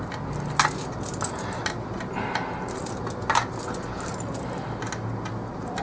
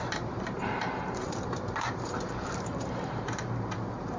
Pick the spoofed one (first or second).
second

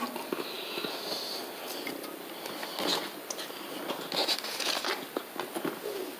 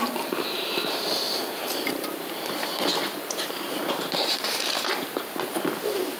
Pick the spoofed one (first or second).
second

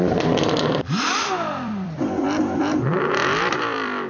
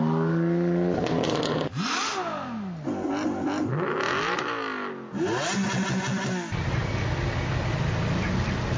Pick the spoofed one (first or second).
first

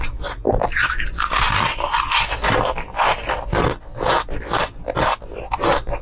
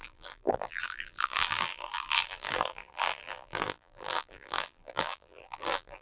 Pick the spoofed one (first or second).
second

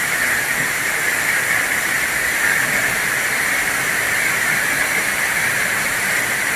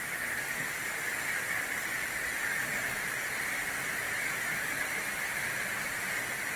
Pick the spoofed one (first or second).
first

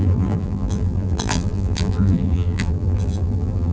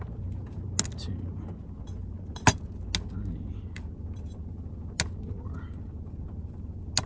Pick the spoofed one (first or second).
first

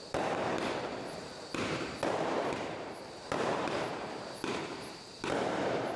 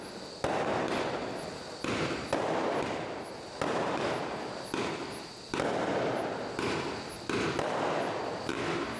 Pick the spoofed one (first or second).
first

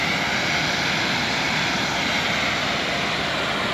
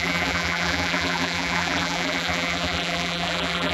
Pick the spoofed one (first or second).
second